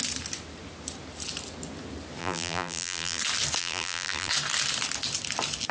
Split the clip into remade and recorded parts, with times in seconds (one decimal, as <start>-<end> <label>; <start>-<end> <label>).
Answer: 0.0-2.2 recorded; 2.2-3.2 remade; 3.2-3.6 recorded; 3.6-4.3 remade; 4.3-5.7 recorded